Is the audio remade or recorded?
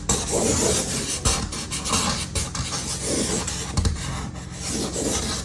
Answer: recorded